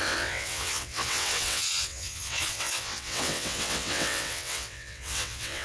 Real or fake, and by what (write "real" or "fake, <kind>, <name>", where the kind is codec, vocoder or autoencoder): fake, vocoder, WaveNeXt